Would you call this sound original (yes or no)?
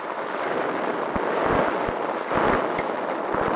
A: yes